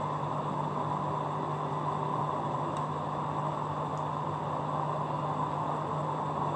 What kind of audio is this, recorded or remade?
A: recorded